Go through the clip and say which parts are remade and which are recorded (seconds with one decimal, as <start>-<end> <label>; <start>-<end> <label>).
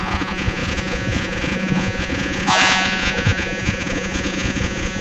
0.0-5.0 remade